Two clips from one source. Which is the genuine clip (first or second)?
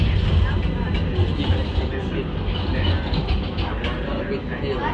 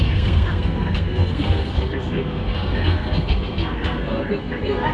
first